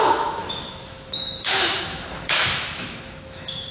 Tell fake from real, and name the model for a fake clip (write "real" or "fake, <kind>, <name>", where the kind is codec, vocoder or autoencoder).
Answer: fake, autoencoder, DAC-VAE